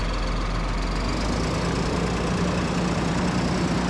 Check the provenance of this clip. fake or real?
real